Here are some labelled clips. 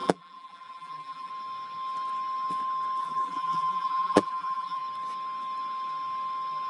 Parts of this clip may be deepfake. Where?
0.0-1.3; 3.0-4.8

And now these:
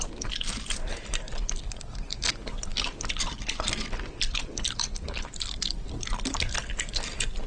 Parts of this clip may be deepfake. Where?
2.7-3.9

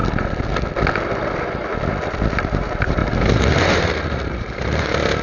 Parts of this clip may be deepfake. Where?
2.3-5.2

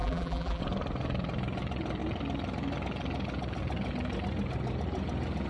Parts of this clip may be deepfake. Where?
0.0-0.6

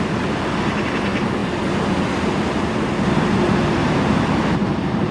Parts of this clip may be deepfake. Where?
3.8-5.1